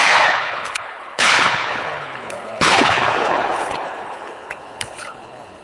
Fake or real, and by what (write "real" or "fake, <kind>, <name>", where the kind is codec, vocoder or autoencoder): fake, codec, HILCodec